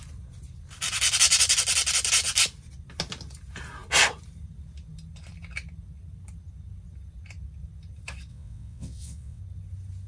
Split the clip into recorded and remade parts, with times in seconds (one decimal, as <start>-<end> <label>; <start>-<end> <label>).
0.0-8.3 recorded; 8.3-9.4 remade; 9.4-10.1 recorded